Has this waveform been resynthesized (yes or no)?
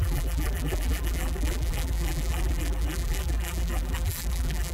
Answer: yes